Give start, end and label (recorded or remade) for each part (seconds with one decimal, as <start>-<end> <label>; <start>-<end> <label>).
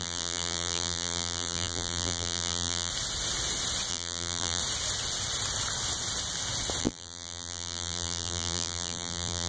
0.0-2.9 remade; 2.9-3.9 recorded; 3.9-4.6 remade; 4.6-6.8 recorded; 6.8-9.5 remade